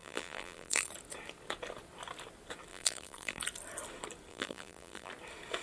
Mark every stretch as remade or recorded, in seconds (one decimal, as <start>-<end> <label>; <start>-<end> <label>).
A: 0.0-0.9 remade; 0.9-2.7 recorded; 2.7-3.4 remade; 3.4-4.3 recorded; 4.3-5.1 remade; 5.1-5.6 recorded